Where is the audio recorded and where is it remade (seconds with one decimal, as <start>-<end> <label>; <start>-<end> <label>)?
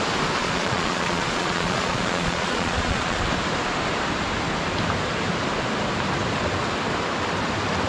0.0-0.4 recorded; 0.4-3.2 remade; 3.2-7.9 recorded